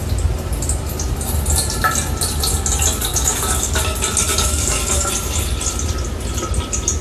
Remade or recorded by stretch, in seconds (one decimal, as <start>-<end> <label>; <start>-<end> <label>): 0.0-3.1 recorded; 3.1-3.8 remade; 3.8-4.3 recorded; 4.3-5.1 remade; 5.1-7.0 recorded